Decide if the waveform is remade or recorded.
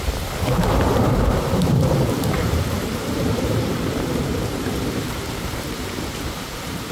remade